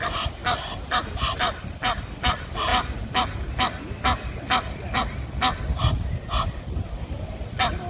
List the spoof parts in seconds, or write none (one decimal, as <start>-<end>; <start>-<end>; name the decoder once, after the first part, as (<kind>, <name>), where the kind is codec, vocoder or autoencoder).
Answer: 0.0-0.4 (vocoder, BigVGAN v2); 0.9-2.7; 7.0-7.9